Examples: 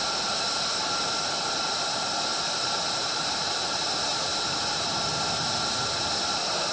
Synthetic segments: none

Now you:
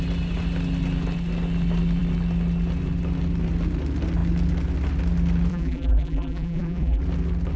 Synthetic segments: 5.5-7.0 (vocoder, BigVGAN v2)

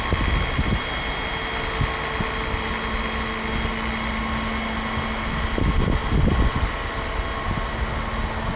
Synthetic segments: none

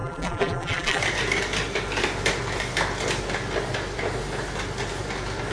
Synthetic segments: 0.0-1.0 (vocoder, BigVGAN v2)

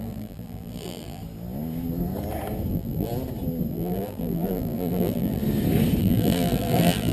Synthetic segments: 0.0-1.2 (vocoder, BigVGAN v2); 2.7-3.1; 3.7-5.4; 6.0-7.1

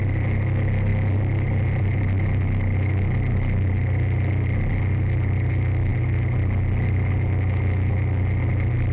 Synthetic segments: none

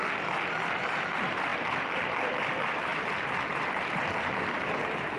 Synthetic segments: none

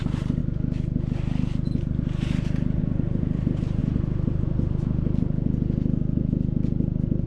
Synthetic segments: 0.0-0.4 (vocoder, BigVGAN v2); 2.8-3.8